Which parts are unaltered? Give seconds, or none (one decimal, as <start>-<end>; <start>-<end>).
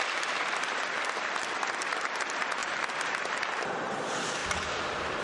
4.4-5.2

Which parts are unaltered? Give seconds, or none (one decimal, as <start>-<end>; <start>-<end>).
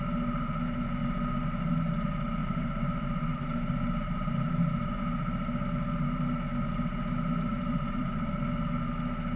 0.0-2.4; 4.9-7.5; 8.3-9.4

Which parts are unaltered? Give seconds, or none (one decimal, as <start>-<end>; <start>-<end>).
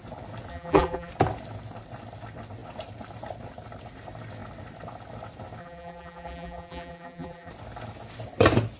0.0-0.5; 1.1-5.6; 7.5-8.8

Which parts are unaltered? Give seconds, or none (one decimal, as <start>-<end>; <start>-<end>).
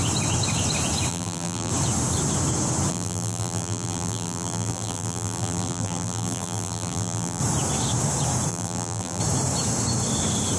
0.0-1.1; 1.7-2.9; 7.4-8.5; 9.2-10.6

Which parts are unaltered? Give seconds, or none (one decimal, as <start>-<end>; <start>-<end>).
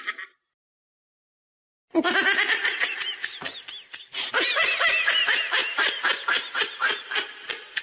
1.3-2.5; 3.2-4.3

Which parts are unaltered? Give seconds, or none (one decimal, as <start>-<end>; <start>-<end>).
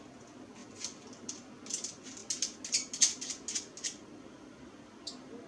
0.0-5.5